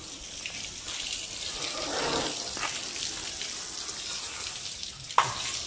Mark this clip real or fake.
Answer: real